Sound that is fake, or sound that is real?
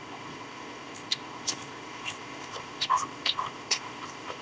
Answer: fake